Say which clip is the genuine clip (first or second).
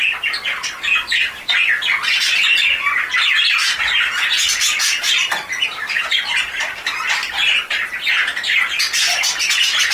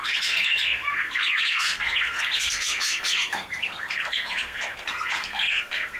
first